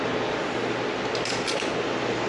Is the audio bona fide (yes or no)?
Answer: yes